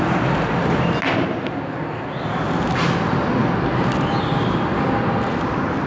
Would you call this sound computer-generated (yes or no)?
no